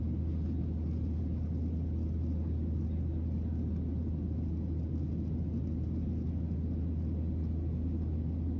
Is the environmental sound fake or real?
real